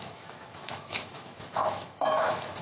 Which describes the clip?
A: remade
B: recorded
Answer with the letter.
A